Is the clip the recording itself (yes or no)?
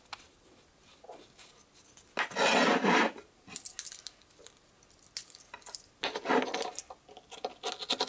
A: yes